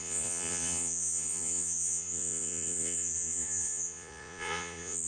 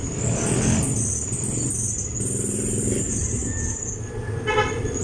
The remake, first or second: first